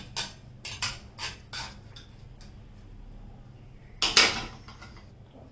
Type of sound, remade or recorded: recorded